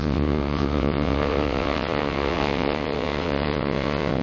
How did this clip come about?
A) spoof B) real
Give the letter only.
A